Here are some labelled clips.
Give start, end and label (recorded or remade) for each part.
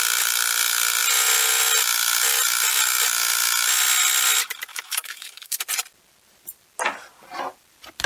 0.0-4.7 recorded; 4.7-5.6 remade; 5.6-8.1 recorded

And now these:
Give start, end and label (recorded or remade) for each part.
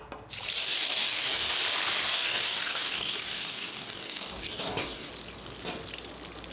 0.0-0.6 recorded; 0.6-1.5 remade; 1.5-2.0 recorded; 2.0-5.1 remade; 5.1-6.5 recorded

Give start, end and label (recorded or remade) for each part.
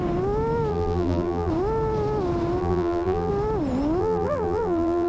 0.0-0.7 recorded; 0.7-1.5 remade; 1.5-2.6 recorded; 2.6-3.3 remade; 3.3-4.0 recorded; 4.0-5.1 remade